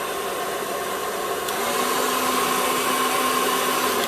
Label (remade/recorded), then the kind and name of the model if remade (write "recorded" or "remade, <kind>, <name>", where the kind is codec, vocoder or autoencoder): recorded